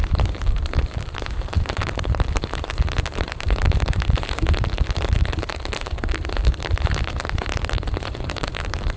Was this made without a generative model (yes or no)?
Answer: no